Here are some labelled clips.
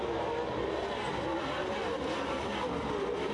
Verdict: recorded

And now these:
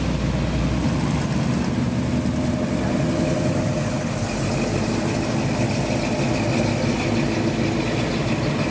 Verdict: recorded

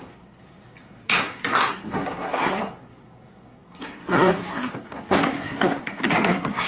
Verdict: remade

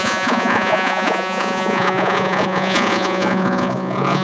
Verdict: remade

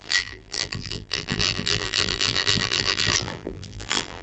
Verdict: remade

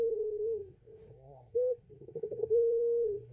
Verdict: remade